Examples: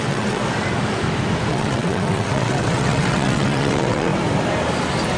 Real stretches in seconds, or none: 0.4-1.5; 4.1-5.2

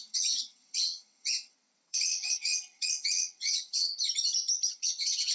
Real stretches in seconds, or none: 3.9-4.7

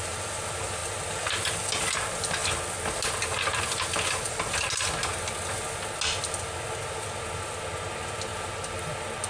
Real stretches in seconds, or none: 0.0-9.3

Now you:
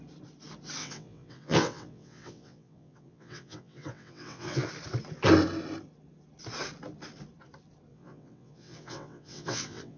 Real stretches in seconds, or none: 0.0-0.8; 4.7-7.9

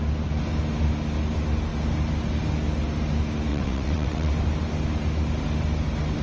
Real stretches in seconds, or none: 0.0-3.5; 4.3-6.2

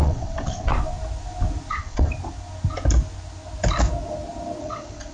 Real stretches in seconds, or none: 0.7-1.7; 2.1-4.6

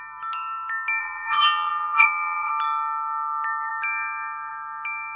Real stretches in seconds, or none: 0.0-1.0; 2.5-5.2

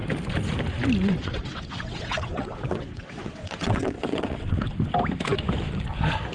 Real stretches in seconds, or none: 0.0-1.2; 4.6-6.3